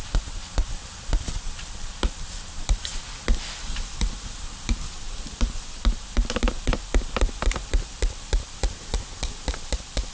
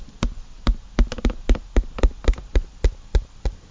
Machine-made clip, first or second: first